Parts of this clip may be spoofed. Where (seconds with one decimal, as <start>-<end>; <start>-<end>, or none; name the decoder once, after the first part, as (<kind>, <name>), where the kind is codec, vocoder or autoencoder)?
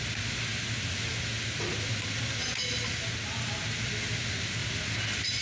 none